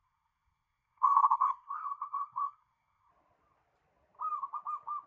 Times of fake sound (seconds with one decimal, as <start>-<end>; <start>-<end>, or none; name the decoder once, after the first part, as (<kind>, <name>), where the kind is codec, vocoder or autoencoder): 0.0-3.1 (codec, SNAC)